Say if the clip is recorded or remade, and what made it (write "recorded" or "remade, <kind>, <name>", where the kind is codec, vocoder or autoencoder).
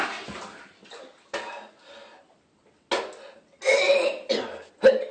recorded